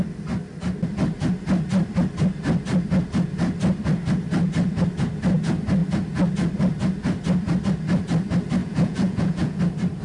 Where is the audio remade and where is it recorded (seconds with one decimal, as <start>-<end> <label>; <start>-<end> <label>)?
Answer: 0.0-8.6 recorded; 8.6-9.6 remade; 9.6-10.0 recorded